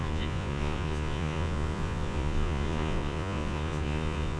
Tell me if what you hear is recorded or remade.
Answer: remade